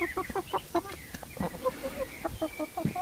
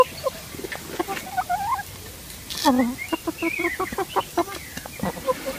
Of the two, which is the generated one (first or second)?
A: first